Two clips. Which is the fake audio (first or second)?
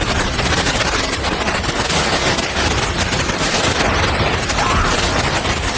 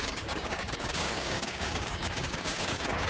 second